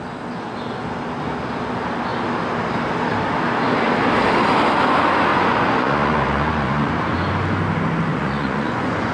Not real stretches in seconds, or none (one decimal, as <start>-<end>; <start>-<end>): 5.3-6.9; 8.1-9.1